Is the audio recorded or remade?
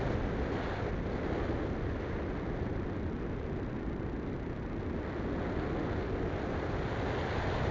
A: recorded